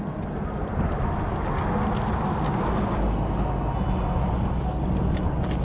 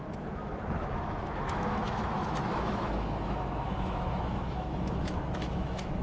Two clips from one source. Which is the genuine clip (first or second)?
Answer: first